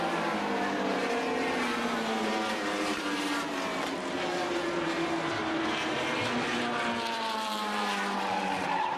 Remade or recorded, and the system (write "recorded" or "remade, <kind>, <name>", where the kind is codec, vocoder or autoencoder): remade, vocoder, BigVGAN v2